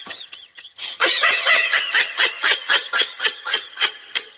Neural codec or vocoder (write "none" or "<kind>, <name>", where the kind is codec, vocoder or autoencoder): vocoder, HiFi-GAN